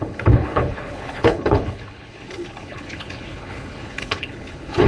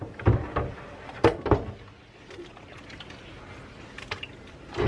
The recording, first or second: second